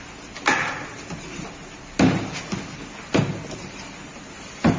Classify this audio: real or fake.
real